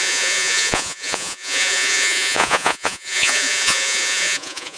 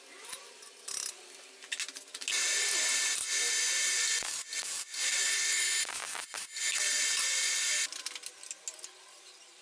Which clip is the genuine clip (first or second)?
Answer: second